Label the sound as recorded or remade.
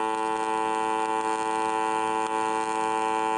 recorded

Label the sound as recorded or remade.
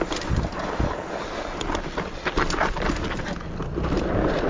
recorded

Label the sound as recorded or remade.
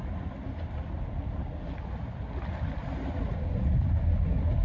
recorded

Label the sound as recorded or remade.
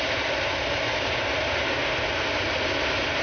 recorded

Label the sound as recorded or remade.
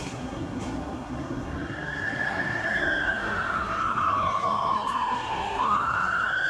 remade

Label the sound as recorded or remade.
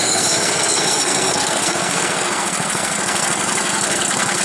remade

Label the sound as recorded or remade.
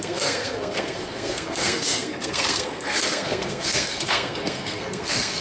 remade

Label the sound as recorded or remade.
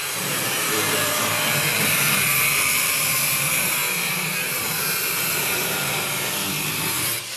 remade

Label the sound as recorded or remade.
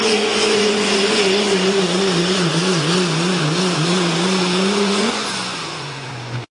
remade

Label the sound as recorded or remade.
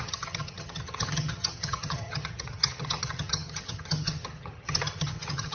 remade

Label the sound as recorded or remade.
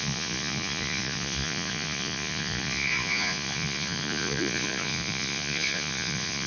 remade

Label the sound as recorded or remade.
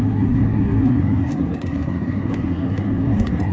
remade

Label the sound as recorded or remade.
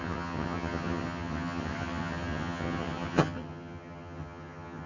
remade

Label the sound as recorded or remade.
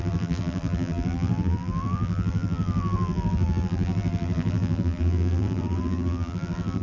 remade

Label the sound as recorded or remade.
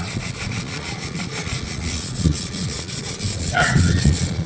remade